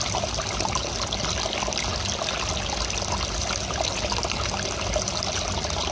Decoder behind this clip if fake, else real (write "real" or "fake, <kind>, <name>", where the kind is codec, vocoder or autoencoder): real